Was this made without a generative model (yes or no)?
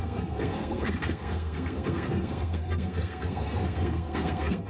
no